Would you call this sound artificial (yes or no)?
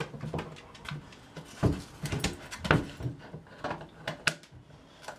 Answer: no